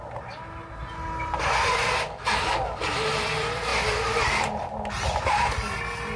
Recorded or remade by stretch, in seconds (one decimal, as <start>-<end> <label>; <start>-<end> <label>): 0.0-6.2 recorded